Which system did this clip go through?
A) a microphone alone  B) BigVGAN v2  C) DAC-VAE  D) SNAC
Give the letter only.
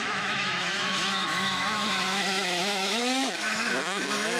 C